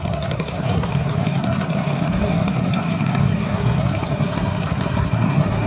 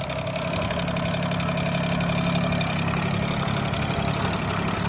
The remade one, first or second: first